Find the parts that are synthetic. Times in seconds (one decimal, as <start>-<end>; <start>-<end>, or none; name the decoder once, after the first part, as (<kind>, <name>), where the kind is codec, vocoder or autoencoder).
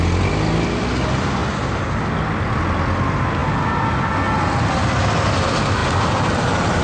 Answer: none